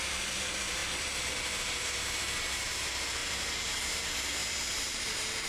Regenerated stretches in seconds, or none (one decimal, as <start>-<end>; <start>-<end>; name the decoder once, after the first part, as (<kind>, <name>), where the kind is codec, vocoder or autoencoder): 0.0-5.5 (vocoder, BigVGAN v2)